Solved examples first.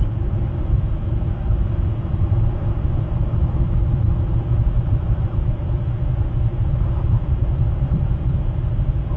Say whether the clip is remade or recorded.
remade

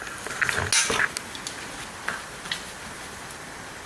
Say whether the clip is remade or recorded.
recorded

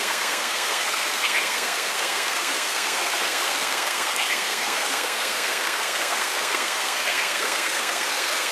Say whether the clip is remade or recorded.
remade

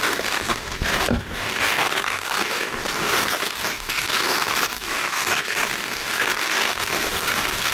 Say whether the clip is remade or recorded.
remade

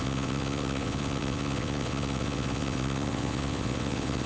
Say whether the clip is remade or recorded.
remade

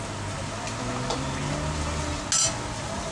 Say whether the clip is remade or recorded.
recorded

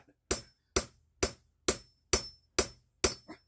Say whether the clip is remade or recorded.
recorded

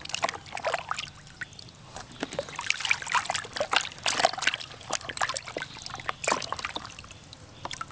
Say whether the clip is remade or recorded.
recorded